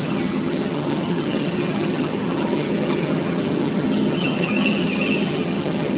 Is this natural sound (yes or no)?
no